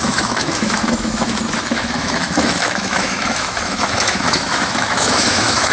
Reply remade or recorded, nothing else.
remade